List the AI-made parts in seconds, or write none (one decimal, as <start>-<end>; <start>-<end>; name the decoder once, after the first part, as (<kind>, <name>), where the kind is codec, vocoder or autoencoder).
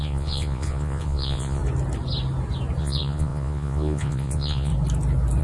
0.0-1.6 (vocoder, Vocos); 2.8-4.7